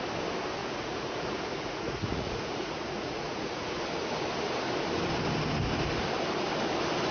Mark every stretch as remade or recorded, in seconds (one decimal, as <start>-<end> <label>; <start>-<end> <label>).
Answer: 0.0-0.6 recorded; 0.6-3.8 remade; 3.8-7.1 recorded